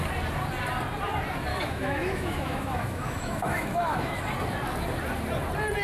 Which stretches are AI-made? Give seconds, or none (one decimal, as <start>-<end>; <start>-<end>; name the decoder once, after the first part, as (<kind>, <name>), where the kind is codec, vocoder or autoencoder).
1.5-4.2 (autoencoder, DAC-VAE)